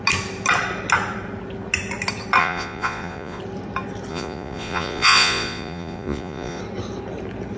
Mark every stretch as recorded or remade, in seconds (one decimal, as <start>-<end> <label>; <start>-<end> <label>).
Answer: 0.0-2.4 recorded; 2.4-3.4 remade; 3.4-4.1 recorded; 4.1-6.6 remade; 6.6-7.6 recorded